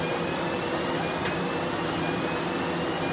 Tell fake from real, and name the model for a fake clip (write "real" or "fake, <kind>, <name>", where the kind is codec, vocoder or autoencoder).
real